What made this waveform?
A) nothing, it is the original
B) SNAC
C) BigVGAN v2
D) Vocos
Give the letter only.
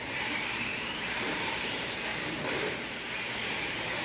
C